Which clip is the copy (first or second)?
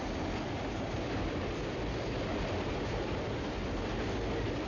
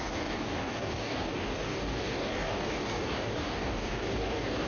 second